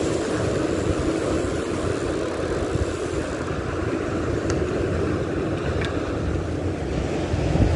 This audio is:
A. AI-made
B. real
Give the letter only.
B